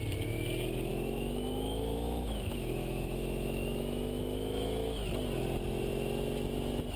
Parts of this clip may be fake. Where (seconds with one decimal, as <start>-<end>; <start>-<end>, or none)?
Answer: 0.9-5.1